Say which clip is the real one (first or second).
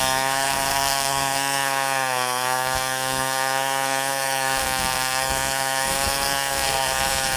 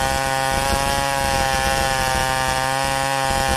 second